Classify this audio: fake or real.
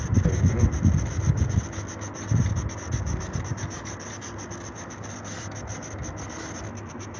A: real